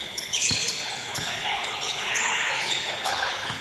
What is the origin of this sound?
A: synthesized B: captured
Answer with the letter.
A